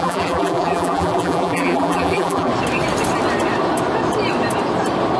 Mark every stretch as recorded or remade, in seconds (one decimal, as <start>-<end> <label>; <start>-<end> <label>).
0.0-2.5 remade; 2.5-5.2 recorded